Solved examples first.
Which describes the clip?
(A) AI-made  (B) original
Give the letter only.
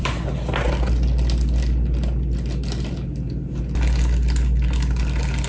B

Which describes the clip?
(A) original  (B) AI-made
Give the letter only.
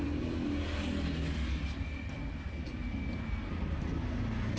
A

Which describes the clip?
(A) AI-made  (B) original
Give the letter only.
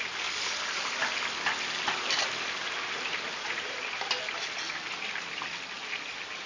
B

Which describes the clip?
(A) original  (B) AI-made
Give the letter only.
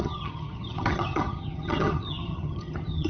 B